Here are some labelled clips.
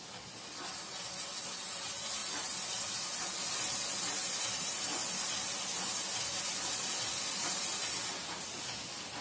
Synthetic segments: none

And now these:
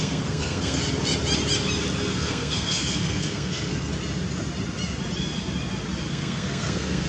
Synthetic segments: 0.0-0.8 (codec, SNAC); 2.1-3.9; 6.1-7.1

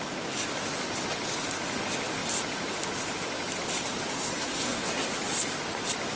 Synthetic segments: 4.1-4.9 (codec, SNAC)

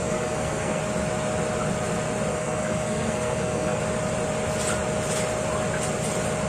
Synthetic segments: 0.0-0.8 (codec, SNAC); 2.3-3.8

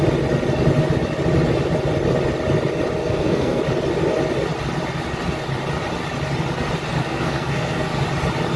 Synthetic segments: 3.0-3.6 (codec, SNAC); 7.0-7.9